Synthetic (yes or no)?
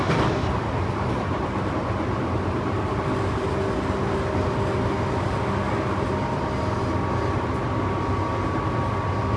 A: no